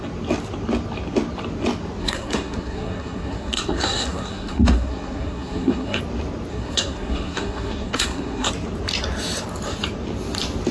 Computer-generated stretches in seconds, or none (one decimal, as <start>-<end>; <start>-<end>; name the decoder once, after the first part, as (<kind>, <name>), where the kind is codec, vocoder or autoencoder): 2.0-6.0 (codec, SNAC); 6.5-8.5